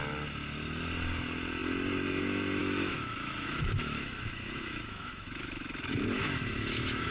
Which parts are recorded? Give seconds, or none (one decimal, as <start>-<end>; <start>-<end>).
0.0-2.6